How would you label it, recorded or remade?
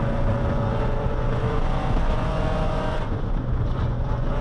remade